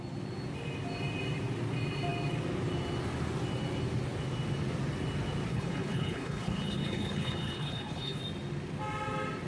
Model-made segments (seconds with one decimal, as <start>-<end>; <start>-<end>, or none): 5.5-8.2